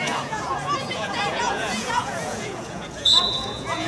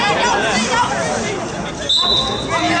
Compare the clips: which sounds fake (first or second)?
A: first